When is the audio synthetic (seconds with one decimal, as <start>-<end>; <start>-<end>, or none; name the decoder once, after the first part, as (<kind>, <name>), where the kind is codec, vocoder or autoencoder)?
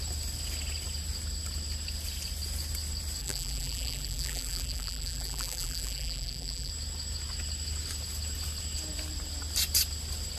3.2-6.7 (vocoder, BigVGAN v2)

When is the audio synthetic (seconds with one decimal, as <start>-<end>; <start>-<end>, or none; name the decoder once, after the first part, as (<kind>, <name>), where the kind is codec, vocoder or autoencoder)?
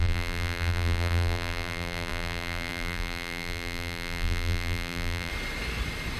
0.0-5.3 (vocoder, BigVGAN v2)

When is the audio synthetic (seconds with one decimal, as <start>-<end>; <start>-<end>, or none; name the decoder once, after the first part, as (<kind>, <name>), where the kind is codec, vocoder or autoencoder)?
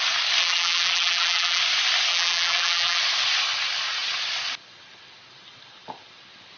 0.4-1.6 (vocoder, BigVGAN v2); 2.1-3.0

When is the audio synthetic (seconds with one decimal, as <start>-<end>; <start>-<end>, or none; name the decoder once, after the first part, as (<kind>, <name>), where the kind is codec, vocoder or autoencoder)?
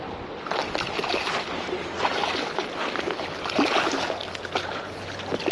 1.0-3.6 (vocoder, BigVGAN v2)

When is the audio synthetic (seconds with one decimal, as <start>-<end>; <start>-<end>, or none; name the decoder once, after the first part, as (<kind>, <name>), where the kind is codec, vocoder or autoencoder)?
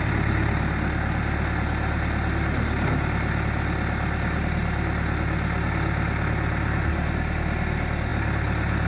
none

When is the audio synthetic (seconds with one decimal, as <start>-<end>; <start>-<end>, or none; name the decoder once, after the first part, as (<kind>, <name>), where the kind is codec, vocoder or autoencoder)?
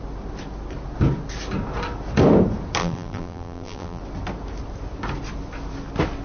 2.8-4.0 (vocoder, BigVGAN v2)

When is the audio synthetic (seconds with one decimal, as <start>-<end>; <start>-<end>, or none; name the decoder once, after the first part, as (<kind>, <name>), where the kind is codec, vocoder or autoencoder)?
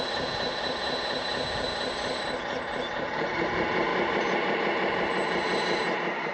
0.0-1.3 (vocoder, BigVGAN v2); 2.5-6.3